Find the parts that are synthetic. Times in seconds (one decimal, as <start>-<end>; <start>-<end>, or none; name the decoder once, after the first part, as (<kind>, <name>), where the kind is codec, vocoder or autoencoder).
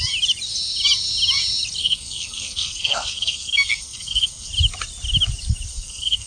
1.8-4.5 (codec, SNAC); 5.7-6.3